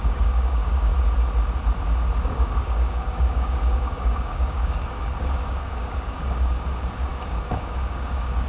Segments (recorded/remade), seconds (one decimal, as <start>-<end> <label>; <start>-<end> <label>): 0.0-0.9 remade; 0.9-2.3 recorded; 2.3-8.5 remade